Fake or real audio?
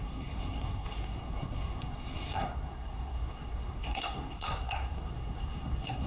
fake